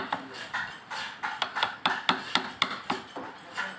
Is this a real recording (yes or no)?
yes